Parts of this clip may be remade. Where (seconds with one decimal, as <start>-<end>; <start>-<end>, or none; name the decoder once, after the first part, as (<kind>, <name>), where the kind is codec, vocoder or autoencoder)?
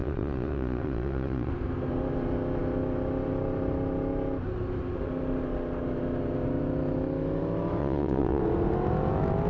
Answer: 0.0-1.5 (vocoder, Vocos); 7.8-8.4